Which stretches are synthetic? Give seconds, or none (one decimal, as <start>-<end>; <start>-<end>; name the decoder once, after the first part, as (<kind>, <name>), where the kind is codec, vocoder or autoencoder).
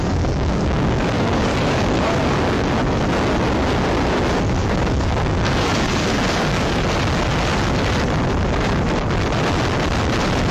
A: 0.0-2.7 (codec, DAC); 4.6-6.8